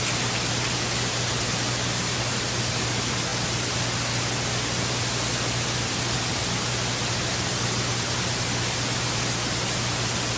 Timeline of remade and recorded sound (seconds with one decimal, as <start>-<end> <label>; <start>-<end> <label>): 0.0-10.4 recorded